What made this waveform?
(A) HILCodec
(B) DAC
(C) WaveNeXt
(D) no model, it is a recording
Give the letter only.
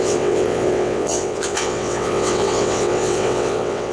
C